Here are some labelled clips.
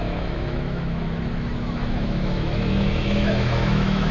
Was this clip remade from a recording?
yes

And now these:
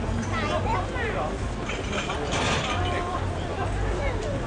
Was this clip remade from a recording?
no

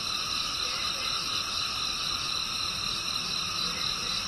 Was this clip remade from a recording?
no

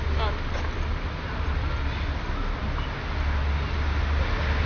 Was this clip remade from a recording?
no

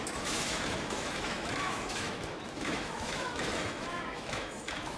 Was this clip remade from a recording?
yes